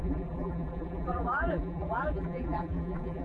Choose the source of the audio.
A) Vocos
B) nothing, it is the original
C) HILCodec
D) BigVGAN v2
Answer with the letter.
D